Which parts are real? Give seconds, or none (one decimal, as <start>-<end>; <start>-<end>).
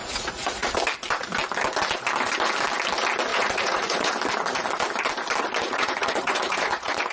0.7-3.3; 4.1-5.6